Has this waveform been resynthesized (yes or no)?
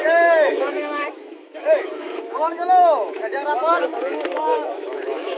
yes